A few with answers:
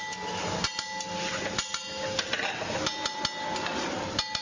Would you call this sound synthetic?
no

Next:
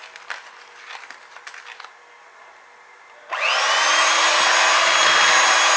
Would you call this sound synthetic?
no